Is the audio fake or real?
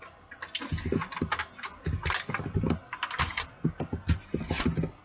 real